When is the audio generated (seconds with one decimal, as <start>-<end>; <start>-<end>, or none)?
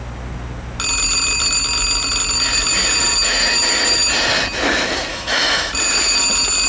5.1-5.7